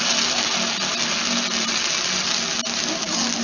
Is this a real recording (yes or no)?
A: yes